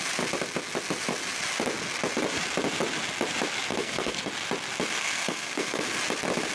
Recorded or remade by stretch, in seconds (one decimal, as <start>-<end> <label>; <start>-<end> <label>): 0.0-3.7 recorded; 3.7-4.3 remade; 4.3-5.0 recorded; 5.0-5.8 remade; 5.8-6.5 recorded